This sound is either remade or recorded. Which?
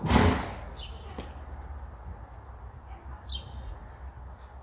recorded